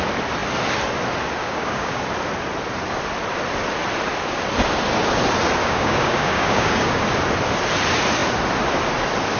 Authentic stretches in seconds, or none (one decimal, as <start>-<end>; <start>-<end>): 0.0-1.4; 2.0-5.6; 7.0-9.4